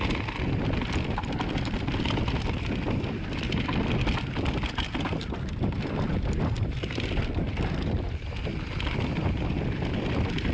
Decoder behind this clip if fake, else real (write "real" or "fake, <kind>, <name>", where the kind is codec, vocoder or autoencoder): real